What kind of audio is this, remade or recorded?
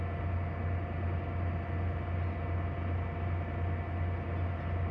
recorded